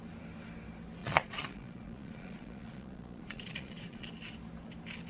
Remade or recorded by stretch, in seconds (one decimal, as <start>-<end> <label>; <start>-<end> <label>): 0.0-1.0 recorded; 1.0-4.1 remade; 4.1-5.1 recorded